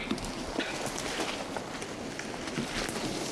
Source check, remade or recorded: recorded